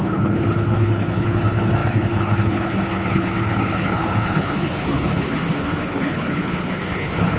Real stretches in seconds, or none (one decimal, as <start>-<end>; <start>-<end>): none